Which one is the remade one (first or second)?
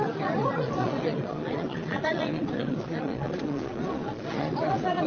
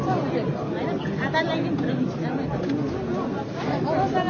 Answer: first